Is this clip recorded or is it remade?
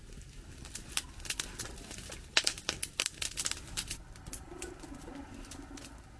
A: recorded